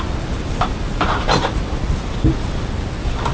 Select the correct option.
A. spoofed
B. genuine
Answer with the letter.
B